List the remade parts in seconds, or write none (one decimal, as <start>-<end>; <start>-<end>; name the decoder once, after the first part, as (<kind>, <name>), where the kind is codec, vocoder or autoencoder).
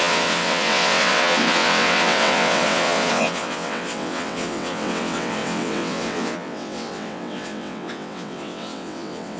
0.0-9.4 (vocoder, WaveNeXt)